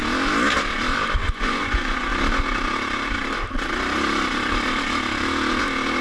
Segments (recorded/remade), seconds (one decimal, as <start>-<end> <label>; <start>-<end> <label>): 0.0-1.2 recorded; 1.2-2.1 remade; 2.1-6.0 recorded

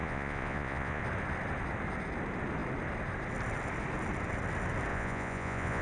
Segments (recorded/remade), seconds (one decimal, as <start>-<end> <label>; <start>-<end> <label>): 0.0-1.0 remade; 1.0-4.9 recorded; 4.9-5.8 remade

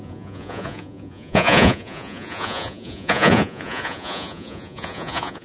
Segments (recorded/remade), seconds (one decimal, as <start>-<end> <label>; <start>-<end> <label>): 0.0-5.4 remade

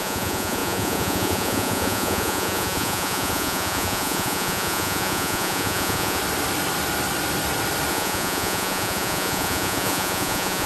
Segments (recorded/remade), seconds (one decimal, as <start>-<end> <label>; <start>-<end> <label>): 0.0-6.2 remade; 6.2-7.9 recorded; 7.9-10.7 remade

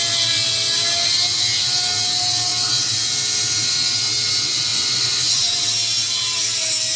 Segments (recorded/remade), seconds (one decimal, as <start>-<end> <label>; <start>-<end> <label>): 0.0-4.7 recorded; 4.7-5.6 remade; 5.6-7.0 recorded

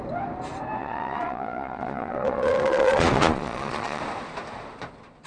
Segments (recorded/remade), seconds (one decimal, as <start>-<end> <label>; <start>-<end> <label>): 0.0-0.8 recorded; 0.8-4.0 remade; 4.0-5.3 recorded

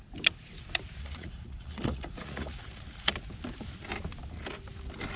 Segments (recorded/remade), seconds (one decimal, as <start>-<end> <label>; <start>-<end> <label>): 0.0-1.0 recorded; 1.0-3.1 remade; 3.1-5.2 recorded